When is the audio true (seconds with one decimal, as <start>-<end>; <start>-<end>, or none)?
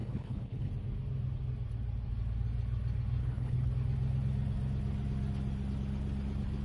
0.7-3.2; 3.7-6.6